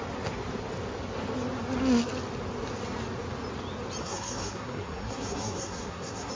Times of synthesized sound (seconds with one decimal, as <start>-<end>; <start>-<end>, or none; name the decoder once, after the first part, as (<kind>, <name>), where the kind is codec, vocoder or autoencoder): 4.0-6.3 (codec, SNAC)